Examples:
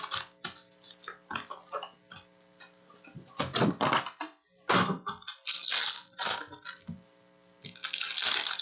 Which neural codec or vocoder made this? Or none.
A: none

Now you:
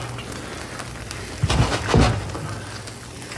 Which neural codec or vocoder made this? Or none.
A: none